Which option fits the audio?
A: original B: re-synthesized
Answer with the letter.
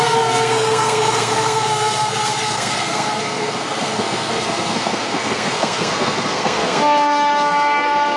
B